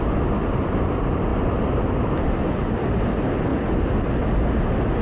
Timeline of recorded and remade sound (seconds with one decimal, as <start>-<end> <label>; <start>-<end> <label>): 0.0-5.0 recorded